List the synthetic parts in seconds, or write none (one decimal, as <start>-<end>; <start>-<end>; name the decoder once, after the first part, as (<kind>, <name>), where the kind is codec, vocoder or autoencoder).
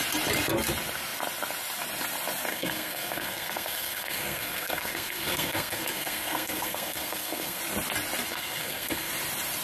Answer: 2.5-7.6 (codec, SNAC); 8.3-9.1